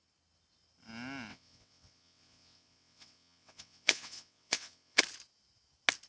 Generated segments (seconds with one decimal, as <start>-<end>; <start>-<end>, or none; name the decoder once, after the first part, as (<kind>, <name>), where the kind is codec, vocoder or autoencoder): 1.3-5.0 (vocoder, WaveNeXt)